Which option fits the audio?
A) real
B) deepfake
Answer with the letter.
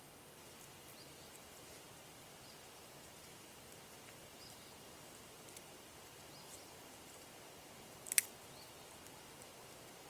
A